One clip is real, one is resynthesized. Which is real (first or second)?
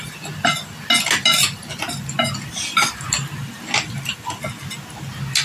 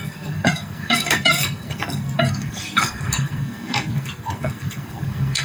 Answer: first